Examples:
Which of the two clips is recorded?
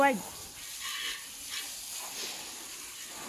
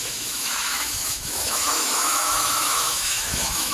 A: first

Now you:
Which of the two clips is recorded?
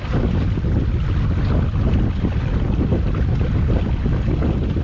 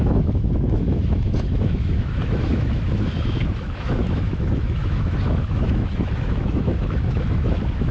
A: first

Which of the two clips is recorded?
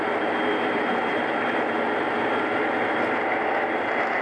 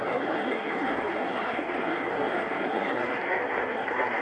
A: first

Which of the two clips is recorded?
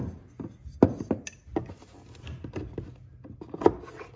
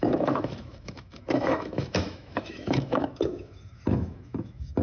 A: first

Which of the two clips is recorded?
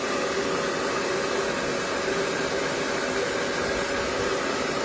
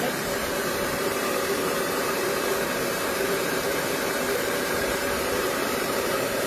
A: first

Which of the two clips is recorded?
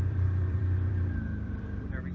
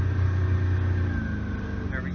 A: second